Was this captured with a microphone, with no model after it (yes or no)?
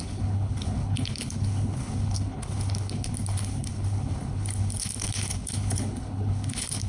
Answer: no